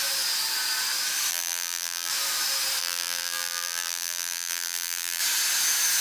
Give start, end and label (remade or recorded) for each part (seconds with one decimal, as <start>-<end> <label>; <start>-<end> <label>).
0.0-1.3 recorded; 1.3-2.1 remade; 2.1-2.8 recorded; 2.8-5.2 remade; 5.2-6.0 recorded